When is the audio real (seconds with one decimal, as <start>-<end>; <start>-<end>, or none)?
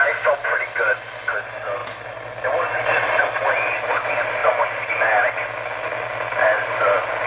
0.0-7.3